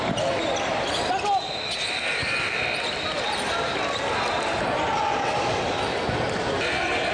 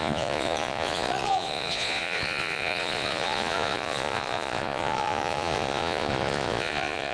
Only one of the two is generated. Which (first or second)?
second